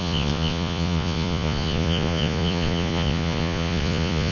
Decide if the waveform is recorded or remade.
remade